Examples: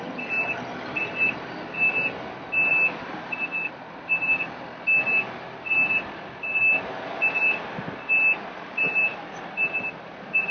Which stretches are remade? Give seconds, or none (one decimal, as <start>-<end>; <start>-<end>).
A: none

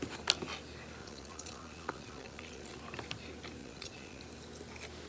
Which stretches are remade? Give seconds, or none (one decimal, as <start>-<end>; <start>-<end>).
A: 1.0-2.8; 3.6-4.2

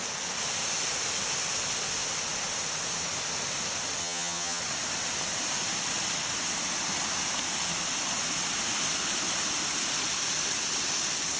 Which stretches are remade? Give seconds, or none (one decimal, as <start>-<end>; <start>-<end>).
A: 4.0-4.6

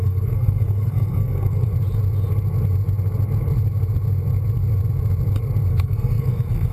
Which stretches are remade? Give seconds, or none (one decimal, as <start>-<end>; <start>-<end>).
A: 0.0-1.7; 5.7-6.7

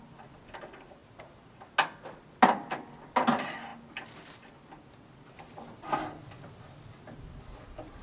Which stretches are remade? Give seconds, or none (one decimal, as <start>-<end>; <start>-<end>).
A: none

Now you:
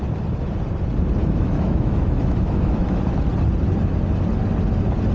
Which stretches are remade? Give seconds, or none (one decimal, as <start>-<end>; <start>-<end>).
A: 1.2-3.0

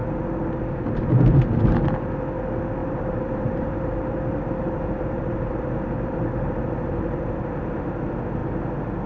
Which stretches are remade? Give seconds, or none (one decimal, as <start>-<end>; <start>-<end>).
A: 2.8-6.6

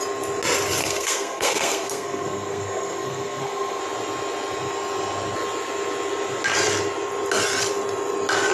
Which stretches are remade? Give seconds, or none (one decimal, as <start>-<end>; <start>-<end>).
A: 0.8-3.8